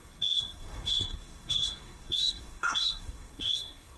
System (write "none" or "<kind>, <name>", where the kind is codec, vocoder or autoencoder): codec, SNAC